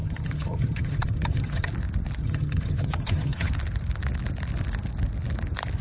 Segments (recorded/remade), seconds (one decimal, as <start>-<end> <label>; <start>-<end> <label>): 0.0-1.7 remade; 1.7-2.2 recorded; 2.2-3.5 remade; 3.5-5.8 recorded